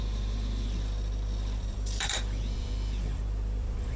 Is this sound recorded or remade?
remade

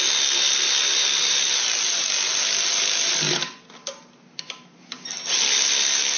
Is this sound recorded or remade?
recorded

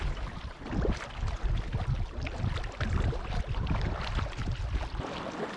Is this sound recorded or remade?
recorded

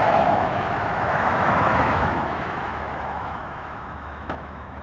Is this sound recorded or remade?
remade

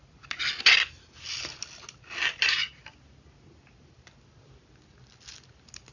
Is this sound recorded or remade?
recorded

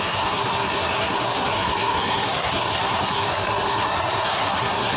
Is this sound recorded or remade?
remade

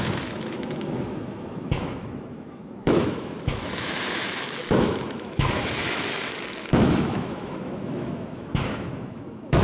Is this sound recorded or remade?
remade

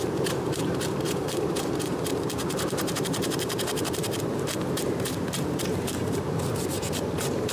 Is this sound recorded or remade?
remade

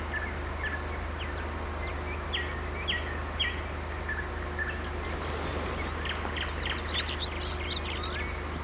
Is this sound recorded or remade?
recorded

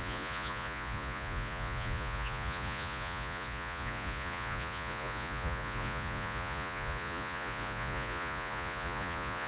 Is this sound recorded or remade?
remade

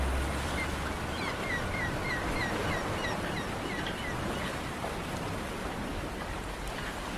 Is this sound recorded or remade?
recorded